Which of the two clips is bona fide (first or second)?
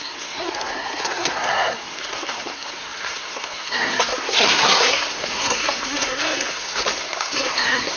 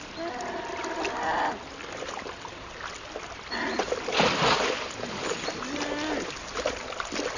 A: second